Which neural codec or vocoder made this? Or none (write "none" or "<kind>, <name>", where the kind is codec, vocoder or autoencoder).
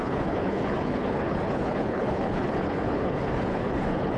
codec, HILCodec